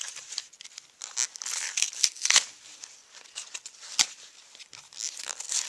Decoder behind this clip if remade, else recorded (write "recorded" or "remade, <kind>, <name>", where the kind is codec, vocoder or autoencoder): recorded